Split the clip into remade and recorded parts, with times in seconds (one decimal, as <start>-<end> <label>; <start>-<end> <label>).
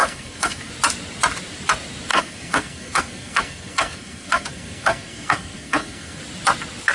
0.0-0.7 remade; 0.7-2.1 recorded; 2.1-6.2 remade; 6.2-6.9 recorded